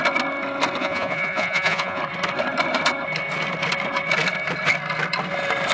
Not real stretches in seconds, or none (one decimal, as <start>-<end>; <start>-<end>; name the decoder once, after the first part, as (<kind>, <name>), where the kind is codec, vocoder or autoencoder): 0.8-2.0 (vocoder, Vocos)